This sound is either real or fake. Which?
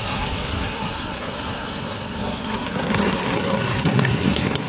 fake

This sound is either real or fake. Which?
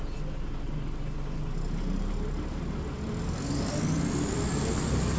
real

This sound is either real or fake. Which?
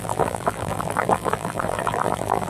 fake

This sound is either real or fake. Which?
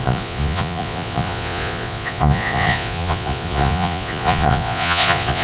fake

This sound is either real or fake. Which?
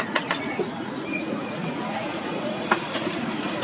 fake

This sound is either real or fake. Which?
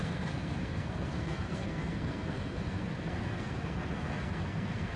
fake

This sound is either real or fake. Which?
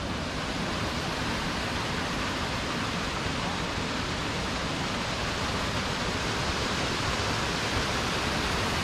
fake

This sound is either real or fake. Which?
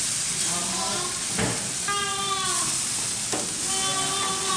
real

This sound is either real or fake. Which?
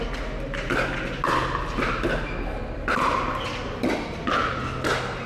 real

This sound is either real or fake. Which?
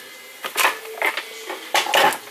real